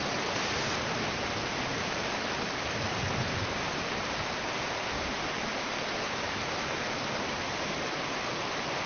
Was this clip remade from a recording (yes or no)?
yes